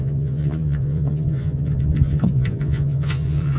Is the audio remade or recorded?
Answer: remade